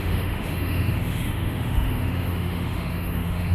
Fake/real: fake